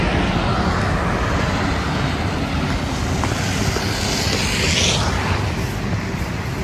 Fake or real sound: real